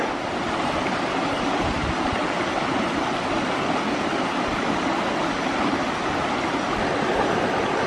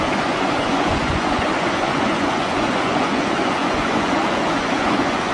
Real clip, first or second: first